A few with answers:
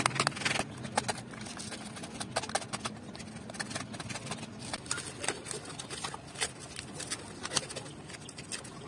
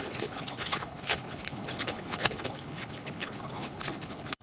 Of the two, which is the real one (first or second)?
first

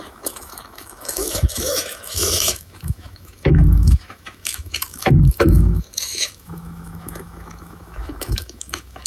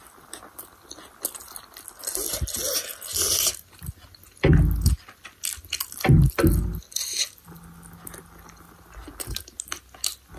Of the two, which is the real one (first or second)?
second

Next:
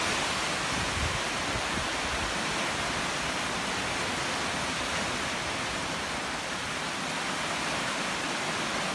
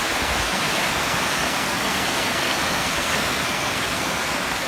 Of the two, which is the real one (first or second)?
first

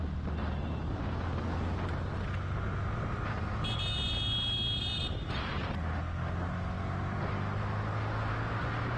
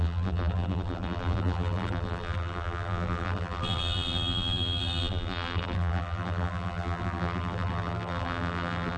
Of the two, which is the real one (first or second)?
first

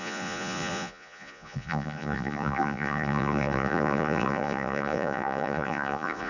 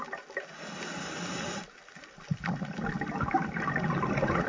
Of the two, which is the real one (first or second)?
second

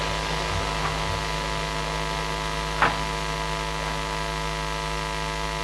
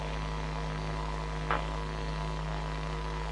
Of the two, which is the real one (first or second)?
first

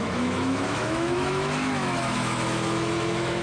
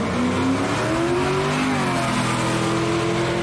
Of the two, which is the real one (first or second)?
second